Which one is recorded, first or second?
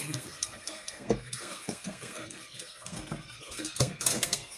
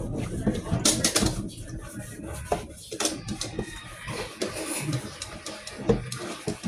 second